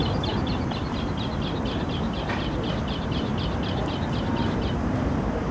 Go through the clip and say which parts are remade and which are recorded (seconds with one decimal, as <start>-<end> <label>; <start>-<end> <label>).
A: 0.0-3.3 remade; 3.3-4.2 recorded; 4.2-5.5 remade